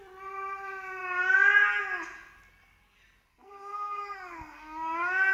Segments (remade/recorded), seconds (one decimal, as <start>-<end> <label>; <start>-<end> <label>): 0.0-3.3 recorded; 3.3-5.3 remade